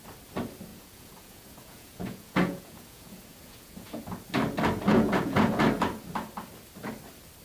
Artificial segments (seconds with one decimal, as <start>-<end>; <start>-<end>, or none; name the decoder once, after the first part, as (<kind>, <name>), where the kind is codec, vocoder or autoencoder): 0.7-4.0 (vocoder, Vocos); 4.9-5.6